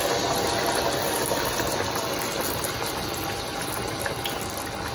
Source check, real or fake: real